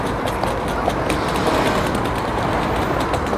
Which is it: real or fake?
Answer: real